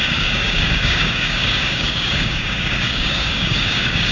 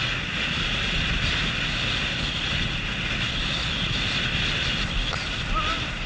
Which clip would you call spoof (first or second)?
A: first